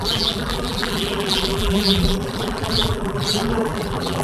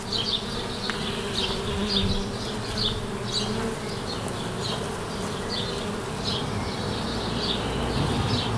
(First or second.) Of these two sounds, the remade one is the first